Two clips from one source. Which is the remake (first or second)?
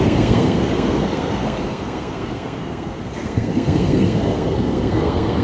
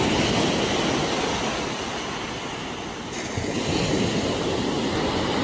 first